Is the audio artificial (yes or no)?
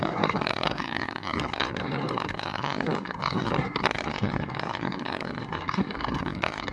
yes